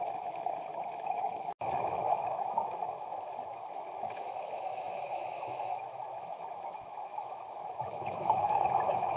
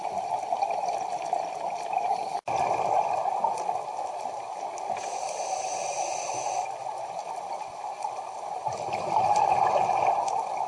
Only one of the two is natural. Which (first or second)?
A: second